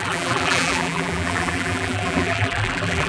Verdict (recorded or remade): remade